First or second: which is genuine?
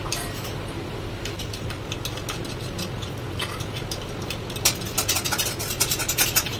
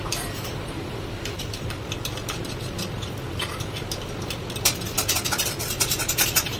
first